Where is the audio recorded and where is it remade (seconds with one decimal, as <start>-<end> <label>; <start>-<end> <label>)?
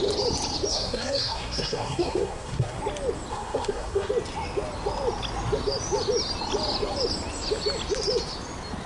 0.0-0.7 recorded; 0.7-2.8 remade; 2.8-3.3 recorded; 3.3-4.1 remade; 4.1-8.9 recorded